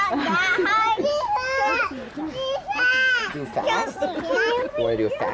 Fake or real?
real